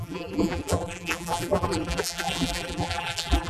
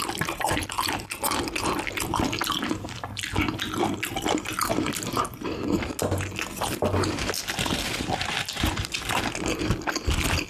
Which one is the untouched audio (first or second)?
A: second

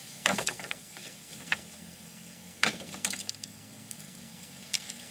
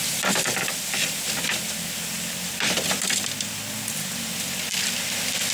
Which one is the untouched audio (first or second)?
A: second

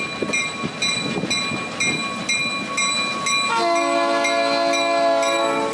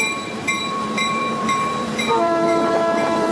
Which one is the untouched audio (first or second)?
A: first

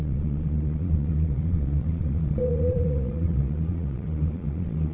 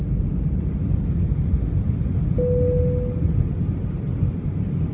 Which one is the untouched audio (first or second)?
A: second